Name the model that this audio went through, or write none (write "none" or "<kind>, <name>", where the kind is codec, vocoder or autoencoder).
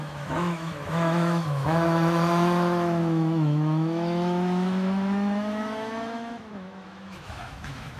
autoencoder, DAC-VAE